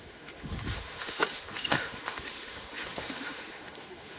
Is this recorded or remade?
remade